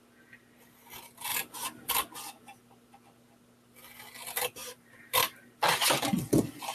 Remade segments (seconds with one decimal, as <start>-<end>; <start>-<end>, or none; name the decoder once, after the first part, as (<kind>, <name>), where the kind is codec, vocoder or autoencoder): 1.3-1.9 (vocoder, BigVGAN v2); 4.6-5.4